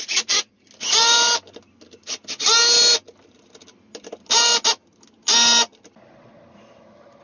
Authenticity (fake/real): real